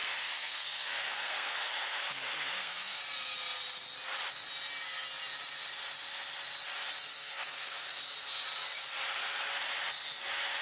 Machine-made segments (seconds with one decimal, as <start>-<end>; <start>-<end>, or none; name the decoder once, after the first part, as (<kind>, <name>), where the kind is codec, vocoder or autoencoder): 0.0-3.0 (codec, SNAC); 7.1-8.0